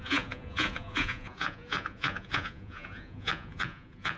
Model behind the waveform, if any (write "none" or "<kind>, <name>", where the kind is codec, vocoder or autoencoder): vocoder, Vocos